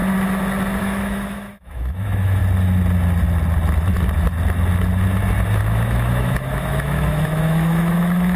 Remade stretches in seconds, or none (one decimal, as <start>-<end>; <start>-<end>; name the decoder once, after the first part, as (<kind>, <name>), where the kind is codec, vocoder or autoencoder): 0.8-2.4 (autoencoder, DAC-VAE); 5.6-8.4